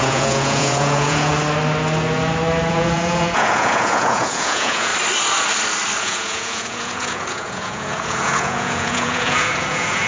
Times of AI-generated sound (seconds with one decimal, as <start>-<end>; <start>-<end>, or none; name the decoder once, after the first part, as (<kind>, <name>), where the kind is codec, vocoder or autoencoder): 0.0-1.3 (vocoder, Vocos); 2.7-4.9; 6.0-10.1